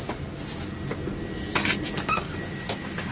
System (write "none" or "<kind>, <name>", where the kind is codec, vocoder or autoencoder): none